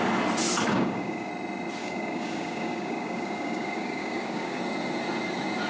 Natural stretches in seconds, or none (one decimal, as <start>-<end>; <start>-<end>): 0.0-0.7; 1.3-1.8; 4.6-5.7